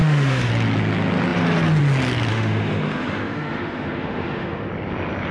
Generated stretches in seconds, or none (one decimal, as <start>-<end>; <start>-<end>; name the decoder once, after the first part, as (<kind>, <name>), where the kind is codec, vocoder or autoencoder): 0.0-0.5 (autoencoder, DAC-VAE); 2.3-4.7